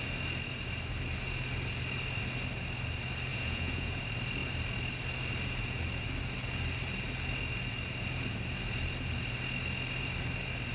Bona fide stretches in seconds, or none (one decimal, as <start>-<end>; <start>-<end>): 0.0-3.3; 4.0-10.7